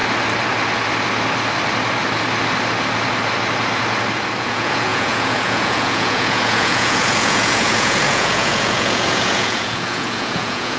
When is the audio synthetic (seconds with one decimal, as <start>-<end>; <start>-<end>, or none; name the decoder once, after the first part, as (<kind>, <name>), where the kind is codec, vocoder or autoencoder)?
4.4-10.8 (vocoder, Vocos)